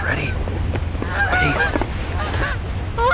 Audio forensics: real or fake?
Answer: real